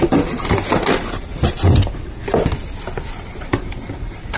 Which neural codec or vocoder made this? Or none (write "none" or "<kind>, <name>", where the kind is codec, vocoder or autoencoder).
none